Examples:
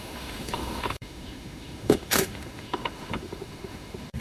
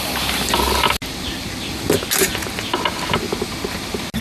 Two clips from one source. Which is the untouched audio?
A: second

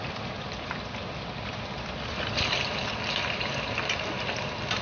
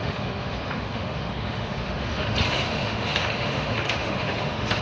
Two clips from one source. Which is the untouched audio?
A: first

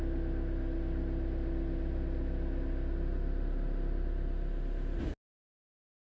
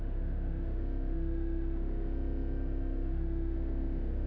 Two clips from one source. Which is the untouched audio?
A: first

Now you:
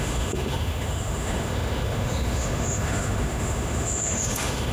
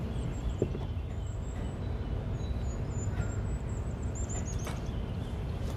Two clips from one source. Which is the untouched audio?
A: second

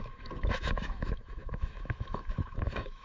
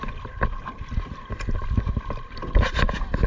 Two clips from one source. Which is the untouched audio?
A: second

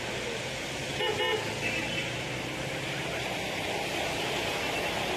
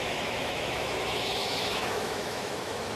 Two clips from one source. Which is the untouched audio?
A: first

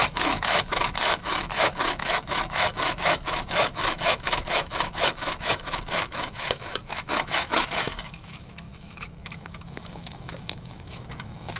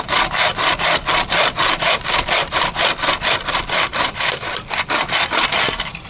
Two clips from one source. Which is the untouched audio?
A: second